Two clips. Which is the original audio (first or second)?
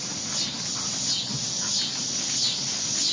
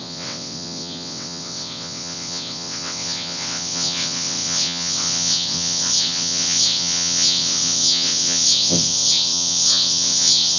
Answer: first